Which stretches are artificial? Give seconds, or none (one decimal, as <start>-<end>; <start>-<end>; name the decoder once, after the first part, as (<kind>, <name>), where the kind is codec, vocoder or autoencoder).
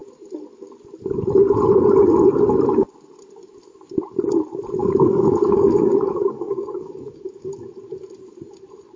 4.8-7.7 (codec, DAC)